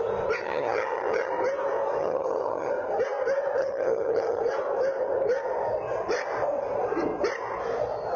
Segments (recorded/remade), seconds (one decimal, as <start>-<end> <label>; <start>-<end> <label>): 0.0-0.4 recorded; 0.4-1.3 remade; 1.3-2.0 recorded; 2.0-2.7 remade; 2.7-3.6 recorded; 3.6-4.4 remade; 4.4-8.2 recorded